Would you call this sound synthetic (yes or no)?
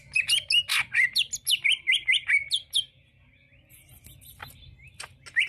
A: no